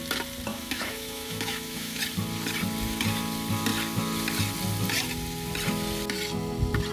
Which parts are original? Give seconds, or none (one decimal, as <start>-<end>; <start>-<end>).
0.0-0.5; 2.0-6.9